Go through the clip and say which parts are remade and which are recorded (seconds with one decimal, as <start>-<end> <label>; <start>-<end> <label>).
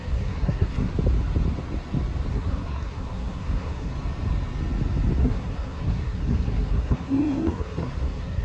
0.0-0.9 remade; 0.9-2.3 recorded; 2.3-3.9 remade; 3.9-5.2 recorded; 5.2-8.4 remade